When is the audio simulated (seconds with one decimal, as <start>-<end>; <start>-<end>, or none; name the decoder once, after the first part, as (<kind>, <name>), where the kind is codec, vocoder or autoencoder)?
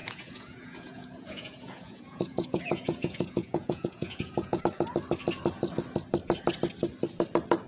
0.0-4.6 (vocoder, Vocos)